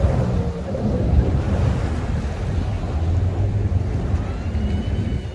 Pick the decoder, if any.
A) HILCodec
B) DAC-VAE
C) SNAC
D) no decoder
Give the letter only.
D